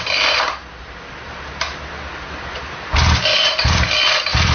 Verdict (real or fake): real